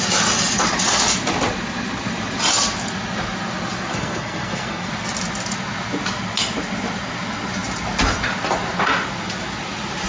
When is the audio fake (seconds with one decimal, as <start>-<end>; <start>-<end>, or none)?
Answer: 3.9-4.9